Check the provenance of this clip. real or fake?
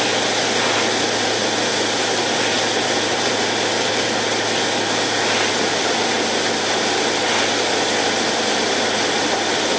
real